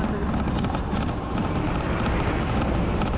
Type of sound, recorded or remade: recorded